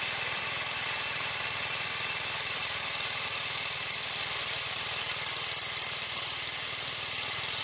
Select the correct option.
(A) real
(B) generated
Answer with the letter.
B